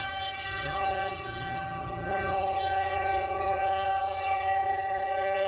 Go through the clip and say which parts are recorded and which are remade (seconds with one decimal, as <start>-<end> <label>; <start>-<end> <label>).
0.0-5.5 remade